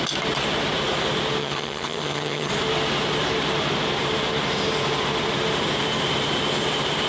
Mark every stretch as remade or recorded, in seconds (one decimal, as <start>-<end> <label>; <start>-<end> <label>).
0.0-1.4 recorded; 1.4-2.5 remade; 2.5-7.1 recorded